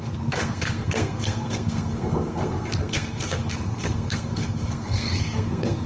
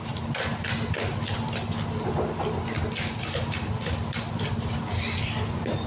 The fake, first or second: first